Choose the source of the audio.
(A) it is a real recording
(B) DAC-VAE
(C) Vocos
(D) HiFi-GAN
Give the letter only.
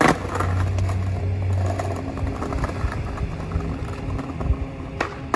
A